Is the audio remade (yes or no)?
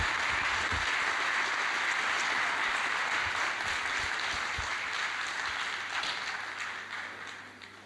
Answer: no